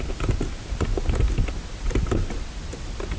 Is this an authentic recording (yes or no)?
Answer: yes